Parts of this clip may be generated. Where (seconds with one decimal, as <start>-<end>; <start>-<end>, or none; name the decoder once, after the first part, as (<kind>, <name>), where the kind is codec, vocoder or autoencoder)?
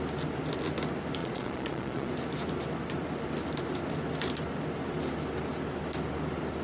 1.2-2.1 (vocoder, Vocos)